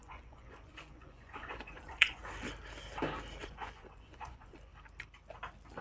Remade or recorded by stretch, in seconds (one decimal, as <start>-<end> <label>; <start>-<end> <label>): 0.0-2.2 remade; 2.2-3.4 recorded; 3.4-4.7 remade; 4.7-5.8 recorded